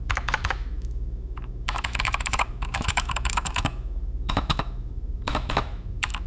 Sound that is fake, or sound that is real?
fake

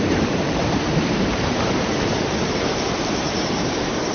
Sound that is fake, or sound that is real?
fake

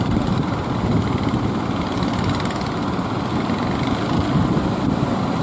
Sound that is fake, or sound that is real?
real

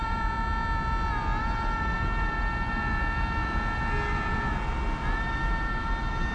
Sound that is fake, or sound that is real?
real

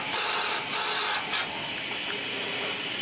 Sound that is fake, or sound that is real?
real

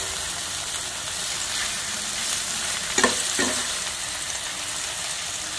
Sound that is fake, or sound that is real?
real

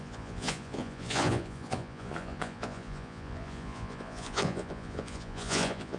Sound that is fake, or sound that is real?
fake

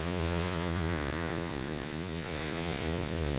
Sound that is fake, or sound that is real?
fake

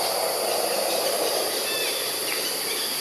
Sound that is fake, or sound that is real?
real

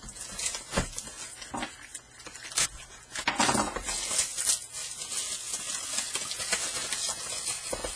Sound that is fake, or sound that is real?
real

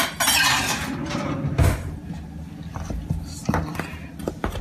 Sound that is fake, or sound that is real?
real